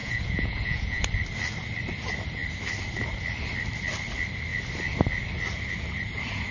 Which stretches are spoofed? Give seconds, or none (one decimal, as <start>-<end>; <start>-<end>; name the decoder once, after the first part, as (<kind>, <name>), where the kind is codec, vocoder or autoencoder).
0.0-1.1 (vocoder, Vocos)